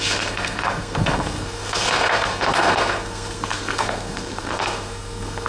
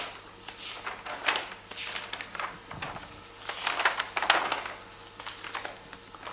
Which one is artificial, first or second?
first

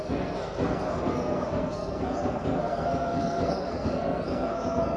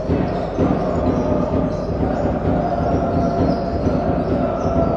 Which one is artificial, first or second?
first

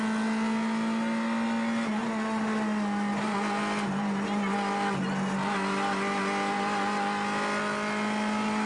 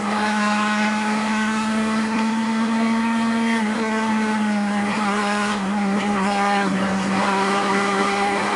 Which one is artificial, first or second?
second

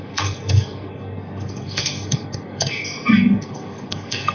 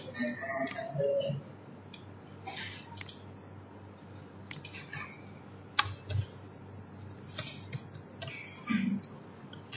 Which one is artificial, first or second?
first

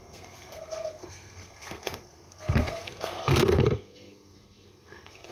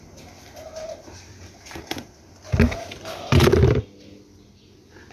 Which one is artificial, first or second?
first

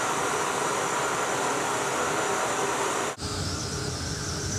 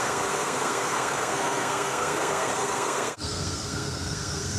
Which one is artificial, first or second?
second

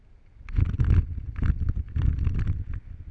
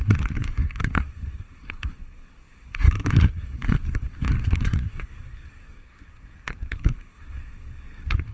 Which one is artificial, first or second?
second